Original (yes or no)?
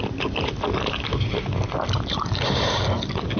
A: yes